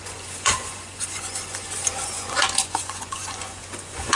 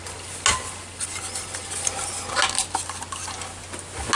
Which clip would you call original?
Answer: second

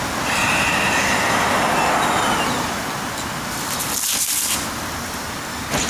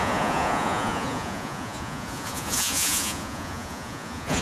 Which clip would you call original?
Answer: first